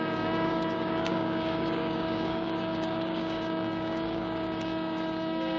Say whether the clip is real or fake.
fake